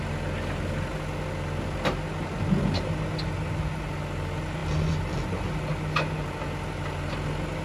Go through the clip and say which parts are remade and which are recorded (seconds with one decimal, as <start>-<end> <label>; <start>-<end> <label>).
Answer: 0.0-7.6 recorded